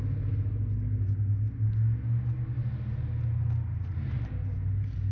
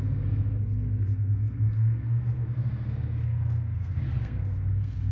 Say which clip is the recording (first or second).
first